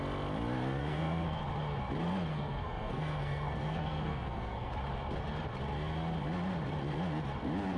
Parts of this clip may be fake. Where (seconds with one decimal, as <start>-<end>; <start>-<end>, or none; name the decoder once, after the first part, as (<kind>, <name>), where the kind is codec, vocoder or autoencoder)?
0.8-1.4 (codec, SNAC); 2.3-4.7